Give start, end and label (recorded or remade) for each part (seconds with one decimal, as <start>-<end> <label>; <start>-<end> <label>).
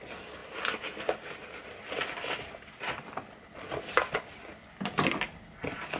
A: 0.0-6.0 recorded